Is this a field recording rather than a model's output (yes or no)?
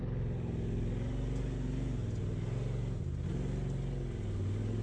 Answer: yes